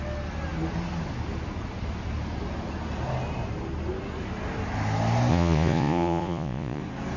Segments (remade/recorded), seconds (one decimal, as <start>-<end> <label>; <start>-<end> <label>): 0.0-5.3 recorded; 5.3-6.8 remade; 6.8-7.2 recorded

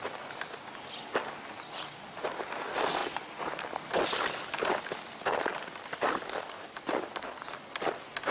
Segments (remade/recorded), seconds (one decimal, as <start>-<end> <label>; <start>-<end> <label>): 0.0-8.3 recorded

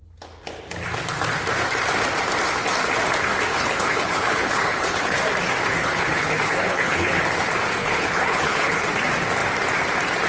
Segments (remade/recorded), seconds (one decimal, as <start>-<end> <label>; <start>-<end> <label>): 0.0-3.5 recorded; 3.5-5.2 remade; 5.2-5.8 recorded; 5.8-7.2 remade; 7.2-7.8 recorded; 7.8-8.8 remade; 8.8-10.3 recorded

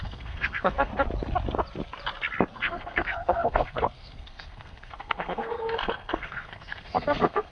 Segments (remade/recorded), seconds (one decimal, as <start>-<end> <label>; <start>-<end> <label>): 0.0-0.9 remade; 0.9-2.5 recorded; 2.5-7.5 remade

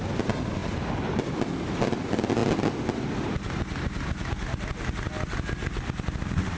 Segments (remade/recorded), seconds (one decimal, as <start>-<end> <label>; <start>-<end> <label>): 0.0-6.6 recorded